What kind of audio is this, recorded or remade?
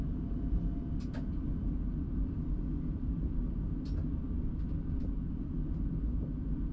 recorded